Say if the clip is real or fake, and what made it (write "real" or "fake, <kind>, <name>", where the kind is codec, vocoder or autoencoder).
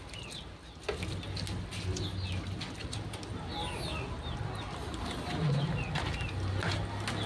real